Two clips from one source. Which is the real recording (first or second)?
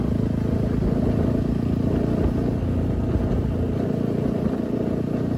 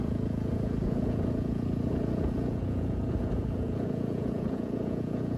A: first